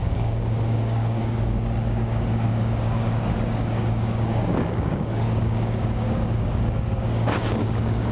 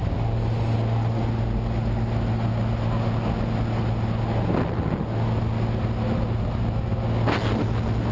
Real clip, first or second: second